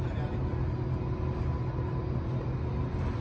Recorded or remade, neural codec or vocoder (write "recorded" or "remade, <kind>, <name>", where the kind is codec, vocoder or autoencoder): recorded